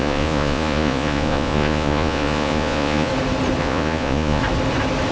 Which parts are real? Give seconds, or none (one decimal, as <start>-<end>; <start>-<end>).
3.1-3.6; 4.4-5.1